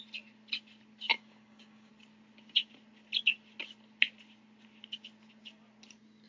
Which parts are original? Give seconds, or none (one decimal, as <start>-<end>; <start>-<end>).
0.0-1.1; 1.9-6.3